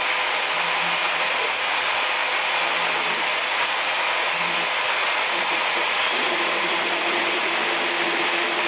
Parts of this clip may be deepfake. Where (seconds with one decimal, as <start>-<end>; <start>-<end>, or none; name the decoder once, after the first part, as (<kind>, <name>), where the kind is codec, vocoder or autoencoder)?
1.0-1.7 (vocoder, Vocos); 3.3-4.1; 5.0-7.5